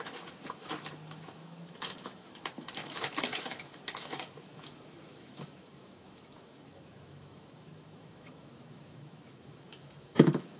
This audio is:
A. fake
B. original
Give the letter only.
A